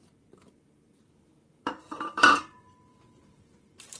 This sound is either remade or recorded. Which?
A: remade